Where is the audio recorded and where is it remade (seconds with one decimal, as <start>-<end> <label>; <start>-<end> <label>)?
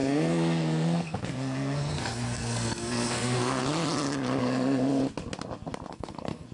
0.0-3.6 remade; 3.6-4.4 recorded; 4.4-5.0 remade; 5.0-5.9 recorded; 5.9-6.5 remade